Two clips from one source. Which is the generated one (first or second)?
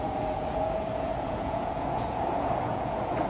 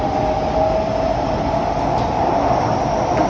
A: first